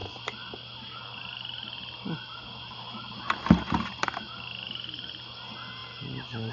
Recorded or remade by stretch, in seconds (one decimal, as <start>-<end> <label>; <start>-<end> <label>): 0.0-6.5 recorded